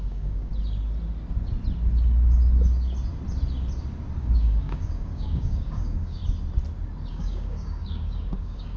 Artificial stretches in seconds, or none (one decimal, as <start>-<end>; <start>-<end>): 0.0-0.5; 4.2-6.2; 7.1-8.8